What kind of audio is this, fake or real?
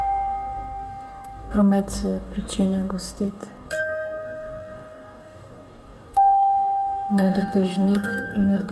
fake